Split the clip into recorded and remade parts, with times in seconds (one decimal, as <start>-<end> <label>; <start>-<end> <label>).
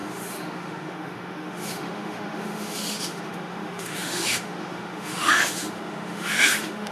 0.0-6.9 remade